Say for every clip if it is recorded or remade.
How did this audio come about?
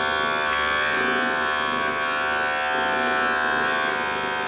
recorded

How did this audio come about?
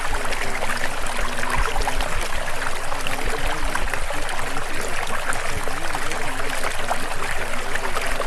recorded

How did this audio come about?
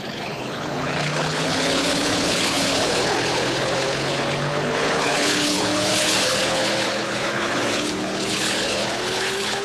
remade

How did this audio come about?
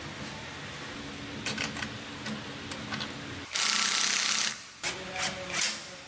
recorded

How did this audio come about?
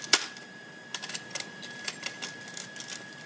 recorded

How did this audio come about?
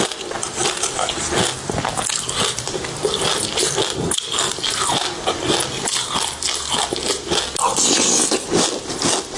recorded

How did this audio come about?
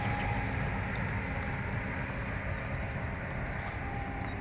recorded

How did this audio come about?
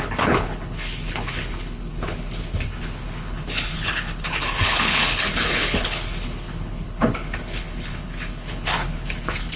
remade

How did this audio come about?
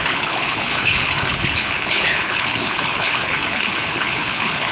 remade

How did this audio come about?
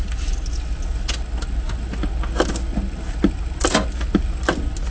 recorded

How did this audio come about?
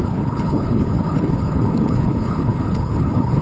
remade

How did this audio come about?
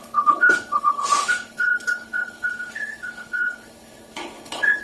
remade